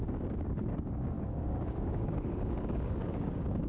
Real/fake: fake